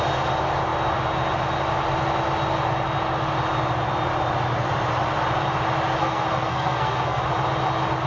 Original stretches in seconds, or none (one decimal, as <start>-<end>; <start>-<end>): 0.0-6.0; 7.2-8.1